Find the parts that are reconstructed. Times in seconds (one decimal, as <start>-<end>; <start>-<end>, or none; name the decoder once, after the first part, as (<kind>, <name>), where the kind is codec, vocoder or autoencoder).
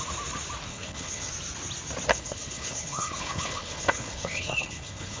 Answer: 0.7-1.3 (codec, HILCodec); 2.1-5.2